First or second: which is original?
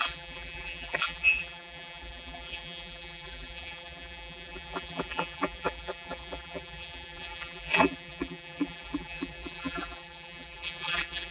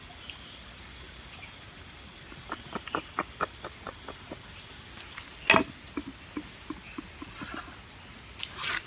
second